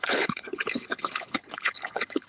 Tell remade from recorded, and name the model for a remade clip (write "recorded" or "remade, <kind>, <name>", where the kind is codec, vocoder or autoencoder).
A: remade, codec, HILCodec